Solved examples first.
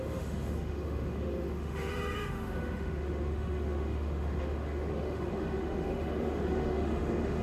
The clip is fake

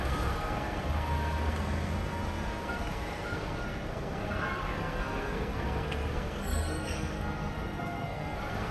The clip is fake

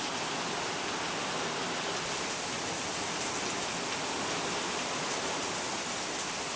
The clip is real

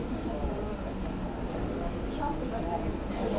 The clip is real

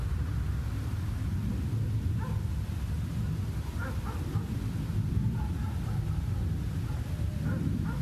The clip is real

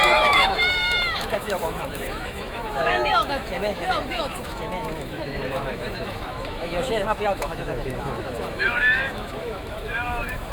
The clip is fake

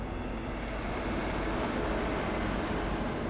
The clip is real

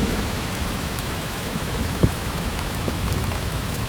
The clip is fake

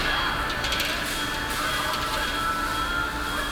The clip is real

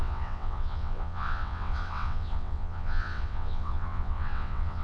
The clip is fake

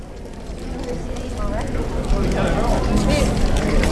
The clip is real